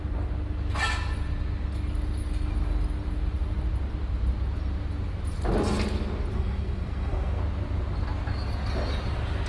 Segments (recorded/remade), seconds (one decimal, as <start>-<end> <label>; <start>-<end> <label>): 0.0-6.3 recorded; 6.3-7.4 remade; 7.4-9.5 recorded